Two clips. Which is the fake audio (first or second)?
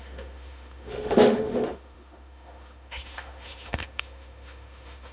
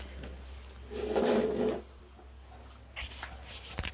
first